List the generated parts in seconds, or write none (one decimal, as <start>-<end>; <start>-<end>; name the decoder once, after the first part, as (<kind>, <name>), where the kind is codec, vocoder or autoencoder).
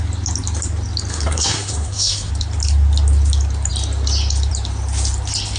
1.1-2.3 (codec, SNAC)